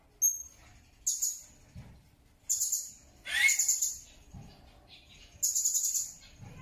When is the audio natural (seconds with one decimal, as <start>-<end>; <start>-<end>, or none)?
0.0-6.6